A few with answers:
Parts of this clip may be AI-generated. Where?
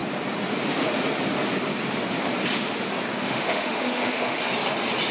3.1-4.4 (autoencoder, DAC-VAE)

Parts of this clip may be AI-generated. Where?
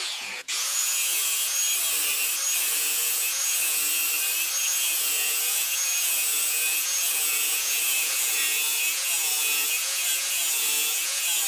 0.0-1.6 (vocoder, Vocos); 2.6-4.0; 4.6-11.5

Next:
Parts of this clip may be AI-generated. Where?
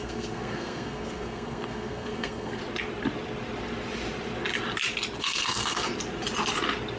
0.0-2.6 (codec, SNAC); 5.2-5.9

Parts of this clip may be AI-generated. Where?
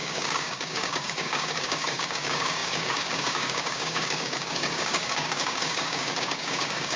0.0-7.0 (codec, DAC)